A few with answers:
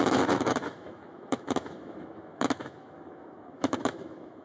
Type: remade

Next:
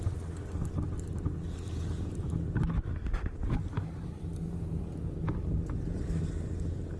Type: recorded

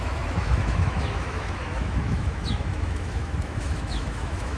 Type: remade